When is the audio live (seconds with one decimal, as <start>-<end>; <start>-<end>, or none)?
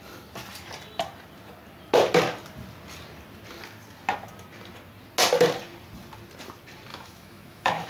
0.0-6.9